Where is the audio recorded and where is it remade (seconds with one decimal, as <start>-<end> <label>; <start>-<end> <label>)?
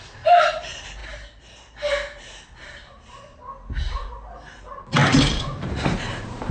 0.0-5.0 recorded; 5.0-6.5 remade